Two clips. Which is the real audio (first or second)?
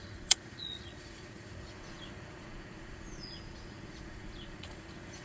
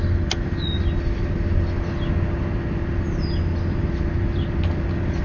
second